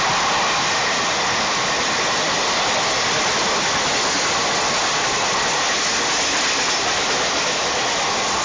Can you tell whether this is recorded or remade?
recorded